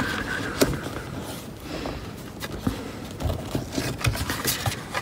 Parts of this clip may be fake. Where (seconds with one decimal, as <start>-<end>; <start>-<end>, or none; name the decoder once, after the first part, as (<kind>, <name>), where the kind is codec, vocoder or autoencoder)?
1.2-2.1 (vocoder, BigVGAN v2)